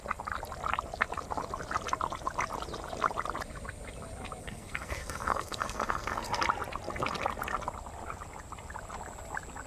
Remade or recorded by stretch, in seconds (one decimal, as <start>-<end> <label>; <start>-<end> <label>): 0.0-4.4 recorded; 4.4-6.4 remade; 6.4-9.7 recorded